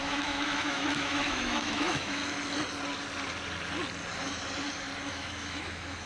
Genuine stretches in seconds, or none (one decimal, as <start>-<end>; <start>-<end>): 2.2-5.1